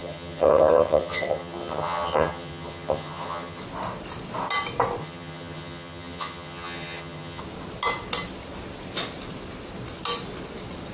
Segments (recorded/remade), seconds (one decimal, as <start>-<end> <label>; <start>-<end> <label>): 0.0-3.6 remade; 3.6-5.0 recorded; 5.0-7.4 remade; 7.4-10.9 recorded